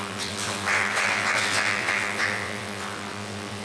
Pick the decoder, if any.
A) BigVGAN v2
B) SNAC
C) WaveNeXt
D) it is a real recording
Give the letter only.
C